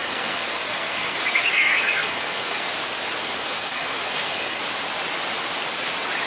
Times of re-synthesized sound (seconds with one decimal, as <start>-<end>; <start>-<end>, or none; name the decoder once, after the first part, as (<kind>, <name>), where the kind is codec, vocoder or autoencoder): 0.0-2.7 (codec, SNAC); 3.2-4.6